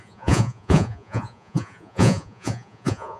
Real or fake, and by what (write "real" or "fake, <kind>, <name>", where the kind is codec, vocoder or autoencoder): fake, vocoder, Vocos